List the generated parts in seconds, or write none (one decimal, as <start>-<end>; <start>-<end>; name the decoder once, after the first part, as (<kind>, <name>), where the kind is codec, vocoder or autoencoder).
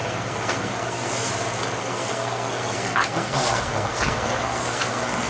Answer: 0.0-1.3 (codec, SNAC); 1.8-5.3